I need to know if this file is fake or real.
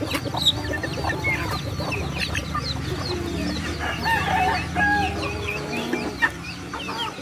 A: real